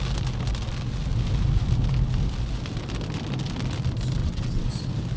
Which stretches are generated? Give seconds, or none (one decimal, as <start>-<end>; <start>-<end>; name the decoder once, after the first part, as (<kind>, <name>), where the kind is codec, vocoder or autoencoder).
4.2-4.7 (vocoder, WaveNeXt)